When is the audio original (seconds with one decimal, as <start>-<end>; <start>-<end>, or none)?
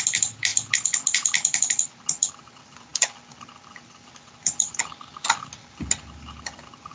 0.5-2.3; 2.9-6.9